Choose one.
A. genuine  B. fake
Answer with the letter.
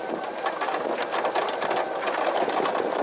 A